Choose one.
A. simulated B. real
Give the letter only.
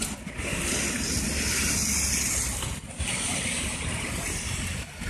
B